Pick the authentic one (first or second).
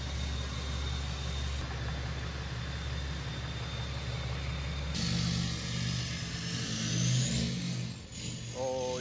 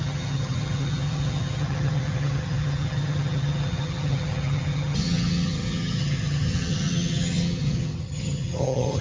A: first